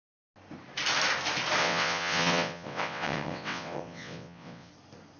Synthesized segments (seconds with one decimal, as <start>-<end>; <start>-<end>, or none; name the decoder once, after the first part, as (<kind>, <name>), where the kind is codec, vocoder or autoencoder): 1.6-4.7 (vocoder, WaveNeXt)